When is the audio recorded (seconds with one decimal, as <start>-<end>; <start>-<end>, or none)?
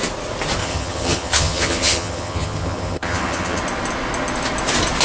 0.0-0.6; 3.6-5.0